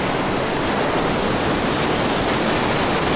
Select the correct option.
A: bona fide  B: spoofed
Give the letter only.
A